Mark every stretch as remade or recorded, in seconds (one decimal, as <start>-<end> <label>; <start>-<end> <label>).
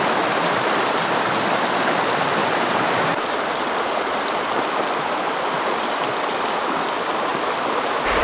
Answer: 0.0-2.4 recorded; 2.4-4.6 remade; 4.6-7.3 recorded; 7.3-8.2 remade